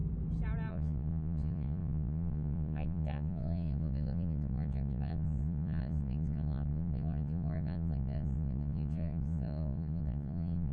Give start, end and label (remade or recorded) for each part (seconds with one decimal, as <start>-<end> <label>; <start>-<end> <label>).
0.0-0.7 recorded; 0.7-10.7 remade